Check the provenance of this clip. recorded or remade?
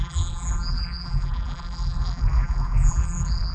remade